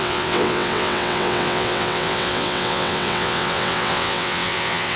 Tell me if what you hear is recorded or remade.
remade